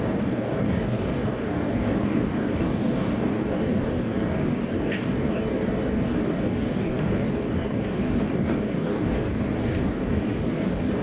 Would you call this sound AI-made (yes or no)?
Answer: yes